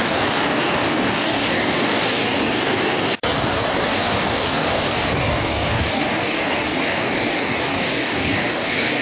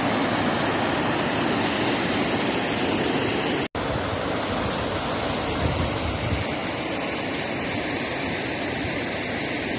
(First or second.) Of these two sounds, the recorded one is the second